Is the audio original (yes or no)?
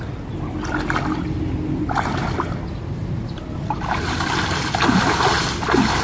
yes